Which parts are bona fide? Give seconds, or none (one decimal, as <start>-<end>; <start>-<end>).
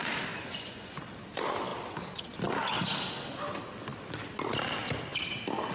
0.0-0.5; 1.0-5.7